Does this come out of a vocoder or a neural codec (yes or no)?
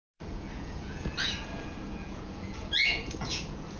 yes